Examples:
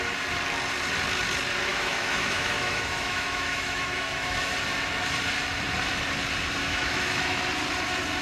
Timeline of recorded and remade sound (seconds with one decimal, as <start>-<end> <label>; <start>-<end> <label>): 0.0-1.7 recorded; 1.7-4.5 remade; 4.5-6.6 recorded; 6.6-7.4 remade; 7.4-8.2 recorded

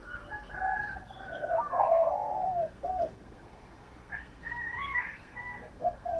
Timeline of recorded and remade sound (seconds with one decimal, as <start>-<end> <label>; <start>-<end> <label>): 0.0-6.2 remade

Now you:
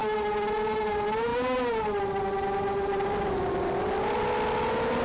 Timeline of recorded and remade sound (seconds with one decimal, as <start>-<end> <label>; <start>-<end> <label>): 0.0-5.0 recorded

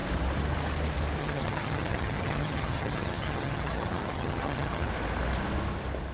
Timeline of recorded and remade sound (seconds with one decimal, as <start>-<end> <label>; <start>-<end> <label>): 0.0-1.2 recorded; 1.2-4.9 remade; 4.9-6.1 recorded